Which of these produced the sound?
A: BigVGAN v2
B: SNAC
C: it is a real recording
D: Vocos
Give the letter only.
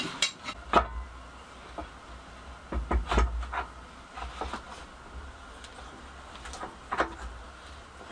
C